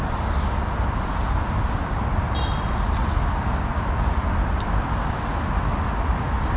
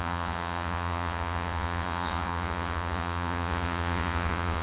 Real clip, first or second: first